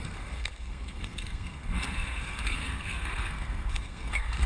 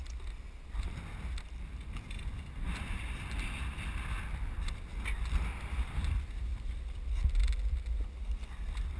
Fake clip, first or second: first